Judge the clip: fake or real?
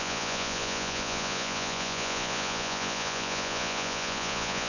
fake